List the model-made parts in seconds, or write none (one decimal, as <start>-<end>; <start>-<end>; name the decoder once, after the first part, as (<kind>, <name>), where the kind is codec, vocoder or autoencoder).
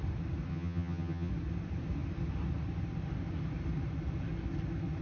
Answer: 0.5-1.3 (vocoder, HiFi-GAN)